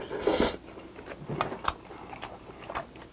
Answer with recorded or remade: recorded